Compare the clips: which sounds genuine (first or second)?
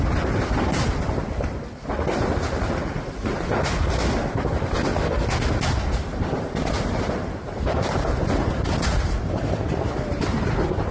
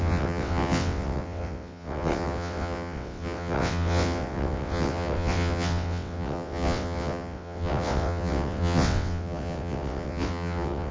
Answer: first